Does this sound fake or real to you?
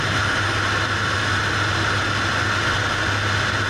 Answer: real